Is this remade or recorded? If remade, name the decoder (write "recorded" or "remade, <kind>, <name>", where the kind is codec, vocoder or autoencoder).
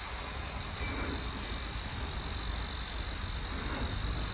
recorded